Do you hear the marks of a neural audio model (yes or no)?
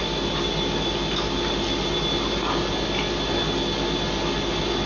no